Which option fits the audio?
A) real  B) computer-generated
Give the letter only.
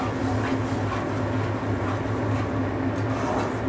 A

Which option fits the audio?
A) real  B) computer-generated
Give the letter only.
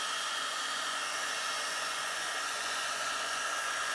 B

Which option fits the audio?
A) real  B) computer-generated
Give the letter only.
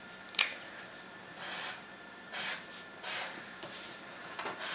B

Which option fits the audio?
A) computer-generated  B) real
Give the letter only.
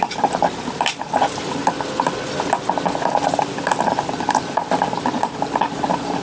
B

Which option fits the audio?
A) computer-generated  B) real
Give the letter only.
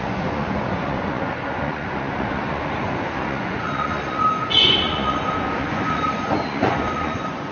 A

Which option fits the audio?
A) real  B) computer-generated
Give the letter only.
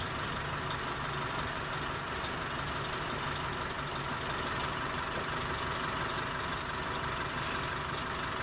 A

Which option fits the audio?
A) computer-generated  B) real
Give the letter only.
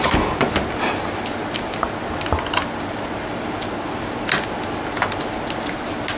B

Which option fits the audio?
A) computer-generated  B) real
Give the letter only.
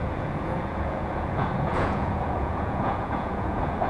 A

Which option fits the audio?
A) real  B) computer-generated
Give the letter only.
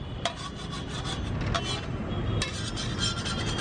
A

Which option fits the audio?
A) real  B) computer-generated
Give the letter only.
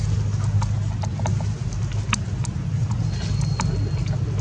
A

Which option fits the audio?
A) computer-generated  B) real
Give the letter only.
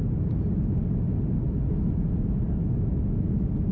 B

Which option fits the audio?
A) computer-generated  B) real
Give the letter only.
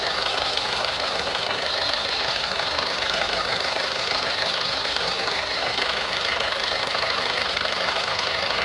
A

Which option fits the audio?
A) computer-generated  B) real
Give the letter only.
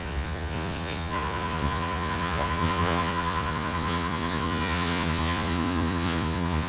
A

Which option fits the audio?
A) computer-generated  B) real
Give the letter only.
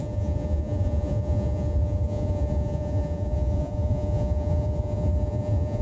A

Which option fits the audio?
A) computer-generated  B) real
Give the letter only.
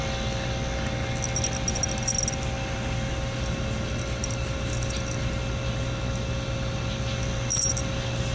B